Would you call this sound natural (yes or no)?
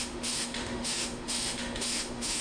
no